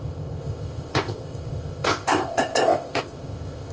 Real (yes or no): no